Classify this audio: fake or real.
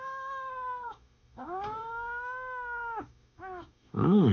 fake